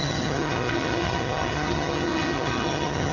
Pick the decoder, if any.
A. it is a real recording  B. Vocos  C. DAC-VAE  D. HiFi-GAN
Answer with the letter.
D